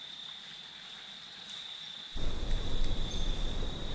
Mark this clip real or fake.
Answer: real